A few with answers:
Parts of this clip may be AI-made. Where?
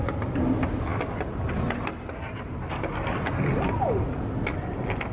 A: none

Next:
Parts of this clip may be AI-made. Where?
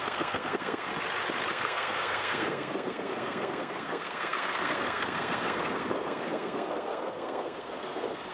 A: 0.0-0.9 (codec, SNAC); 1.5-8.3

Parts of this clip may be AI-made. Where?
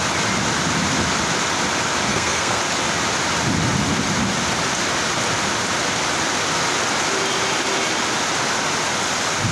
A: 2.1-2.6 (codec, SNAC)